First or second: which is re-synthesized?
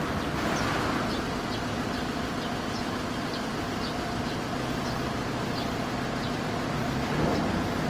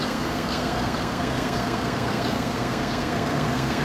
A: second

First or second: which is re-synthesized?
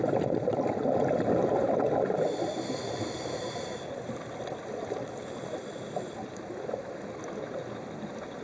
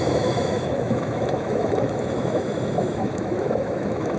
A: second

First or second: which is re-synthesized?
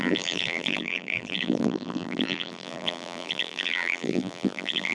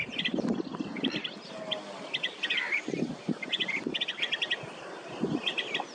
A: first